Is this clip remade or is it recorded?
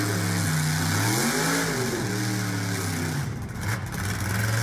recorded